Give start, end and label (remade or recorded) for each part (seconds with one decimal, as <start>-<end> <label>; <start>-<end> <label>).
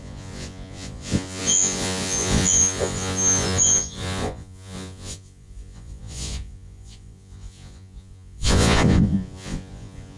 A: 0.0-10.2 remade